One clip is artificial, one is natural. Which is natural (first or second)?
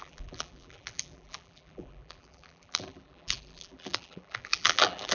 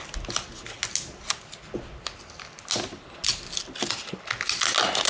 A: second